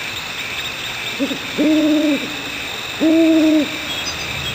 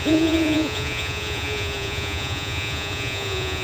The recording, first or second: first